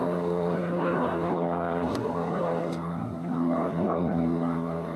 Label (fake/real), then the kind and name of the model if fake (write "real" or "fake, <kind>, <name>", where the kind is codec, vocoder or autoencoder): fake, codec, SNAC